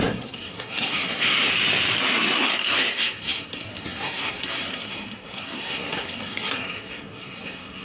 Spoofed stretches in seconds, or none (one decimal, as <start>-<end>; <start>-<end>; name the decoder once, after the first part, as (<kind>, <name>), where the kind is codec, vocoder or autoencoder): 0.0-1.5 (codec, SNAC); 2.0-7.8